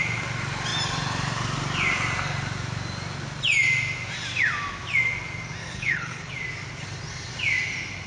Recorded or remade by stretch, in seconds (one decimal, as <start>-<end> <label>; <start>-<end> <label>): 0.0-5.6 recorded; 5.6-6.3 remade; 6.3-8.1 recorded